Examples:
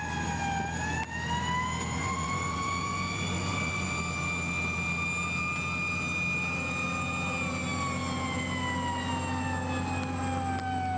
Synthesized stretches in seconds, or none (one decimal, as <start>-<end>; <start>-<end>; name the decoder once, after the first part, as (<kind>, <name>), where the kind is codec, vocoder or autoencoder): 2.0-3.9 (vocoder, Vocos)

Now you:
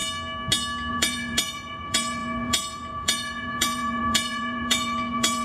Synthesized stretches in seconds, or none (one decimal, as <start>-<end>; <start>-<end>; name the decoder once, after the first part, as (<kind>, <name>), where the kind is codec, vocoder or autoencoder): 0.9-5.4 (vocoder, Vocos)

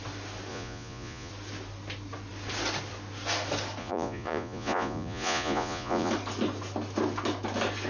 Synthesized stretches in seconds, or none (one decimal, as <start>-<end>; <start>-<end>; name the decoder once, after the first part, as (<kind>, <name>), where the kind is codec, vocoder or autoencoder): 0.5-1.3 (vocoder, Vocos); 3.8-6.1